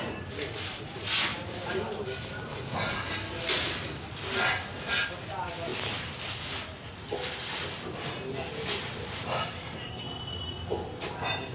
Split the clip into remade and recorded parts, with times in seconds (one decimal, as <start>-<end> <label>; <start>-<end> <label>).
0.0-1.3 recorded; 1.3-2.6 remade; 2.6-11.5 recorded